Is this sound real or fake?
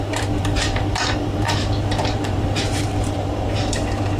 fake